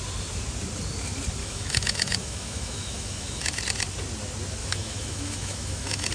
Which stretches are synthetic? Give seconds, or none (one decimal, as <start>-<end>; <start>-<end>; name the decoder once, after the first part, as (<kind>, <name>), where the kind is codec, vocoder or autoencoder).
1.4-3.6 (autoencoder, DAC-VAE); 4.6-6.1